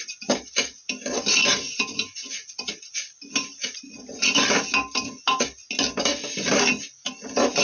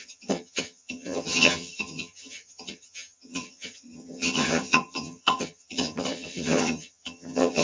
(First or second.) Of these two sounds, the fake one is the second